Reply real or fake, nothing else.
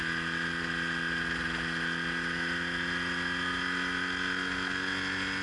real